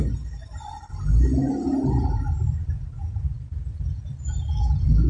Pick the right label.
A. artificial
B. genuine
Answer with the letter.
B